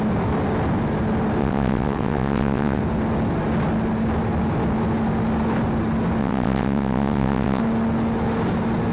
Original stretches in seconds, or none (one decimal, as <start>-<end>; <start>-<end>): 0.0-1.4; 2.8-6.2; 7.6-8.9